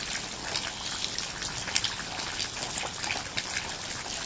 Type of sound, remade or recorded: recorded